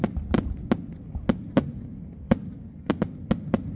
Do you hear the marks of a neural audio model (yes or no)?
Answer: no